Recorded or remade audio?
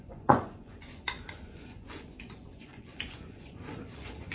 remade